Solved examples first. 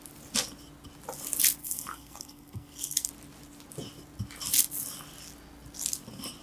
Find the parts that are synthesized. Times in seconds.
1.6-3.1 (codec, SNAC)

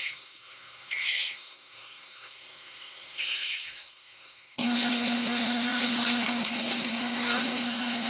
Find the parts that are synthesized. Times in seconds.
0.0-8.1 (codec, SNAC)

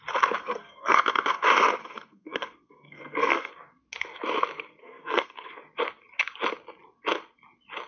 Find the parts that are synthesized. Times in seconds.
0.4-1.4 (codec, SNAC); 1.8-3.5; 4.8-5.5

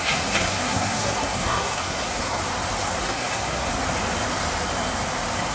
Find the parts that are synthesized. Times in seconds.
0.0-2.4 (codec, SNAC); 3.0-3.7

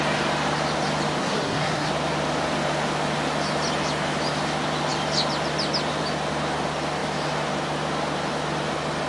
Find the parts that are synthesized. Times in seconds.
1.2-1.9 (codec, SNAC)

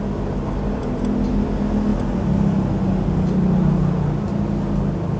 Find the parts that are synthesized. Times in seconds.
none

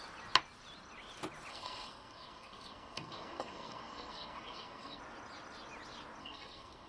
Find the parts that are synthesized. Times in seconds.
1.5-5.0 (codec, SNAC); 6.2-6.9

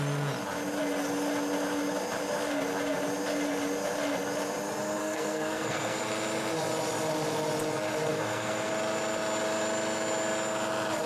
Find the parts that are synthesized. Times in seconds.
5.0-6.0 (codec, SNAC); 8.1-8.7